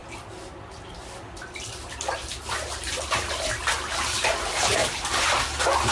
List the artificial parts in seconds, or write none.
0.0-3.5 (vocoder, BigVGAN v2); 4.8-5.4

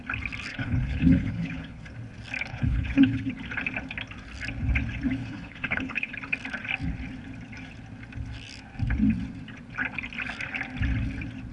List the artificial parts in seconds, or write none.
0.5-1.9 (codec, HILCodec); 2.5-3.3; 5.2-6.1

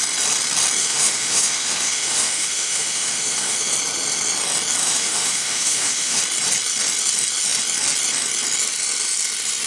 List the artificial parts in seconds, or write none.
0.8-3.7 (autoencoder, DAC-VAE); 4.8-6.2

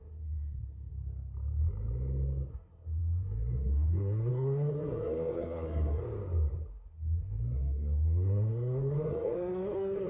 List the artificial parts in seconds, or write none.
0.0-0.9 (codec, SNAC); 2.5-6.0; 6.7-10.1